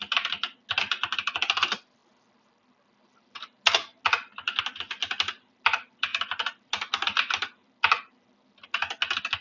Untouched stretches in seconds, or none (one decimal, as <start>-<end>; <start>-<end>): 0.0-9.4